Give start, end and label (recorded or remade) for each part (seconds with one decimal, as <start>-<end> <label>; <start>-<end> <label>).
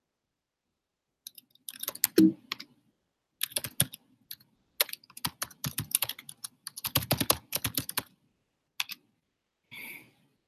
0.0-10.5 recorded